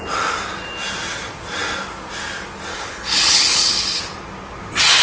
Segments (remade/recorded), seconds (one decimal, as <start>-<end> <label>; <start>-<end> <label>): 0.0-2.7 recorded; 2.7-4.0 remade; 4.0-5.0 recorded

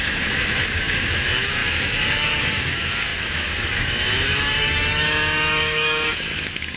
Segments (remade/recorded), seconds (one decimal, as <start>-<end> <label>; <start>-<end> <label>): 0.0-6.8 remade

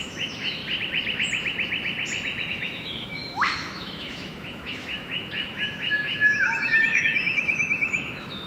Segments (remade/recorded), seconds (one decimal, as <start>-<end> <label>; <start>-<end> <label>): 0.0-0.6 remade; 0.6-2.5 recorded; 2.5-8.5 remade

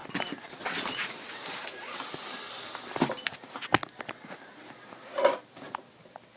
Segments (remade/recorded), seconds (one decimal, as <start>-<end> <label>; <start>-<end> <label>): 0.0-6.4 recorded

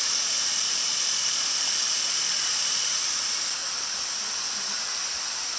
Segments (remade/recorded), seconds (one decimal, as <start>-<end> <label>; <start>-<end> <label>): 0.0-2.6 remade; 2.6-4.1 recorded; 4.1-5.6 remade

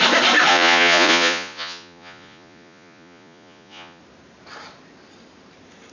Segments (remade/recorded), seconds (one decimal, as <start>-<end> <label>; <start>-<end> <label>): 0.0-0.5 recorded; 0.5-4.0 remade; 4.0-5.9 recorded

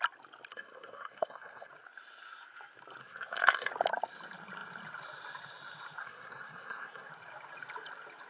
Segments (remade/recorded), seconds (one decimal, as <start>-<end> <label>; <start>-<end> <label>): 0.0-0.5 recorded; 0.5-1.7 remade; 1.7-3.0 recorded; 3.0-3.7 remade; 3.7-6.0 recorded; 6.0-7.1 remade; 7.1-8.3 recorded

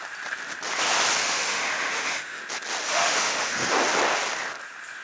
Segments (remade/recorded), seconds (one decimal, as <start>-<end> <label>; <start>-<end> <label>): 0.0-1.2 recorded; 1.2-2.4 remade; 2.4-2.9 recorded; 2.9-3.7 remade; 3.7-5.0 recorded